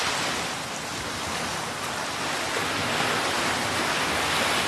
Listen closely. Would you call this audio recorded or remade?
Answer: recorded